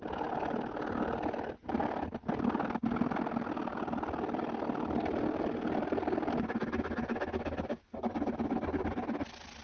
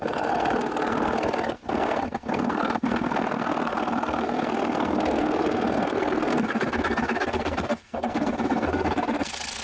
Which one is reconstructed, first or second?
second